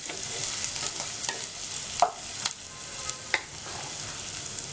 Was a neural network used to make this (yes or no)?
no